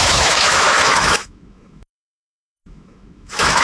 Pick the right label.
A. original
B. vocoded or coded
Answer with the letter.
B